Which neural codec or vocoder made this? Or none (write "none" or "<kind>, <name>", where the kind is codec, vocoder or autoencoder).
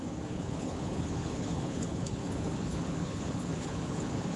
codec, HILCodec